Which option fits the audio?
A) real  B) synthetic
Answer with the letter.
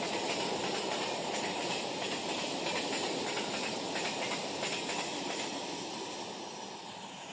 A